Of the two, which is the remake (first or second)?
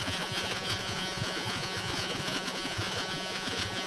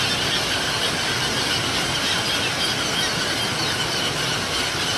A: first